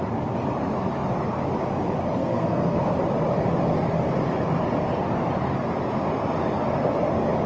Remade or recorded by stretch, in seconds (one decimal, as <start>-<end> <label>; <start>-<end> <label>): 0.0-2.2 recorded; 2.2-2.8 remade; 2.8-7.5 recorded